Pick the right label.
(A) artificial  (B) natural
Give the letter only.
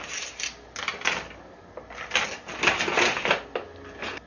B